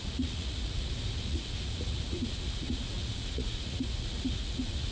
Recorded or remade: remade